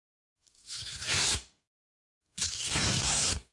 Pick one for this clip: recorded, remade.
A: remade